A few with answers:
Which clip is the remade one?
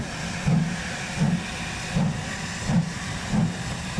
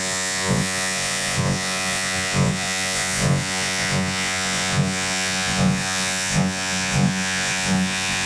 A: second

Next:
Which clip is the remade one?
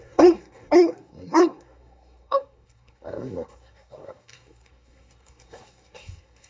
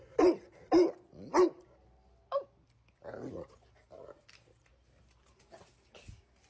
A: first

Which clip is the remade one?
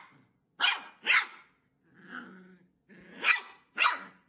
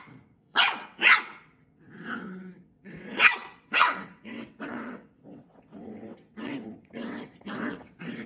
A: second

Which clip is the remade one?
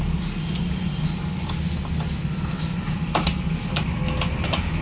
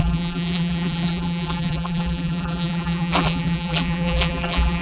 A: second